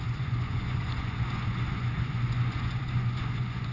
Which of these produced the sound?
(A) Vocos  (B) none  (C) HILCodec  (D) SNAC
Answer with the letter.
A